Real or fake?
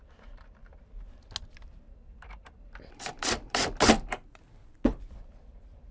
real